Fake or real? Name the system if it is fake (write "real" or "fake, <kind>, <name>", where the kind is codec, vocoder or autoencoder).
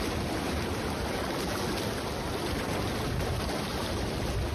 real